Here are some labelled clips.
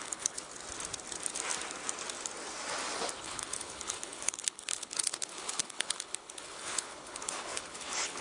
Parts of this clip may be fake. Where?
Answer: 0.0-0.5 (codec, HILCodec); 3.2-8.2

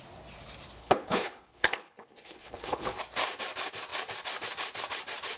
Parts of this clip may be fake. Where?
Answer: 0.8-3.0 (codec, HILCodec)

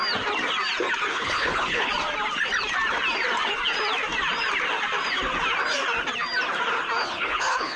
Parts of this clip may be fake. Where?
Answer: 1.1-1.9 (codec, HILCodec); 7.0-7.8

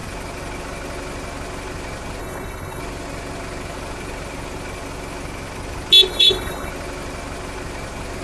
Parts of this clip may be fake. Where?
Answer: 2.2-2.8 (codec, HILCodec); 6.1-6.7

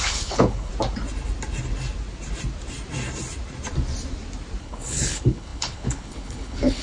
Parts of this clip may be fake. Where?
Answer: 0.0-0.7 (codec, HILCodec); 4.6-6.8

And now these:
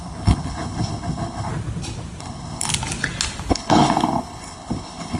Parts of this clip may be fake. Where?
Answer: 0.0-1.5 (codec, HILCodec); 2.2-2.7; 3.5-5.2

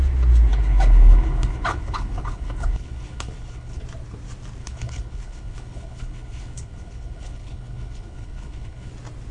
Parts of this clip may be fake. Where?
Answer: 0.5-3.8 (codec, HILCodec); 4.6-8.9